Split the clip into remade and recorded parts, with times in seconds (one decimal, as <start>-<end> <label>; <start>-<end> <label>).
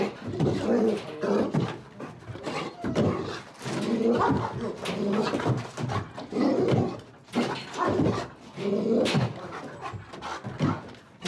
0.0-11.3 recorded